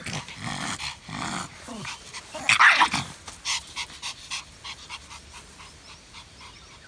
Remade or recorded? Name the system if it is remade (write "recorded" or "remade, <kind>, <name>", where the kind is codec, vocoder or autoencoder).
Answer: recorded